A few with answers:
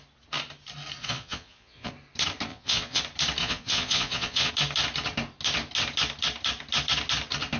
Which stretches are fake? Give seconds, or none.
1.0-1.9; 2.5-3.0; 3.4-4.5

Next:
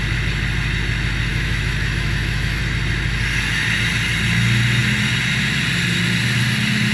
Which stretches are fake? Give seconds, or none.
1.3-2.6

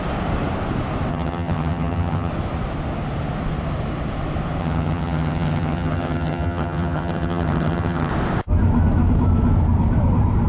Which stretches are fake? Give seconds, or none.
1.1-2.3; 4.6-8.1

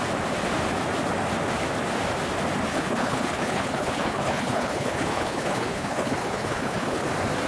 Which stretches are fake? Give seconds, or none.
2.7-7.1

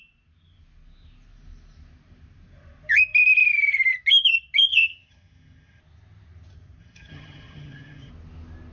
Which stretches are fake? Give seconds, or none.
4.7-5.8; 6.8-8.1

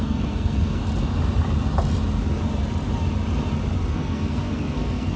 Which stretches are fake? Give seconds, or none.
0.0-0.8; 3.9-5.2

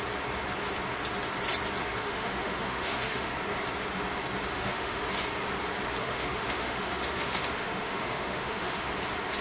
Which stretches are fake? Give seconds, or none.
2.0-3.3; 4.5-5.0; 6.0-8.9

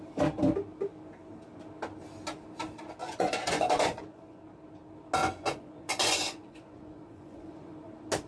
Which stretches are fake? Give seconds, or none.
3.0-4.4; 5.2-7.9